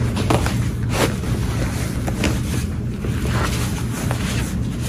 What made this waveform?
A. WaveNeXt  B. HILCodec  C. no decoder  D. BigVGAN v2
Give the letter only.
C